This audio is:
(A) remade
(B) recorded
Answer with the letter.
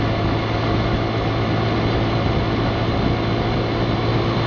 B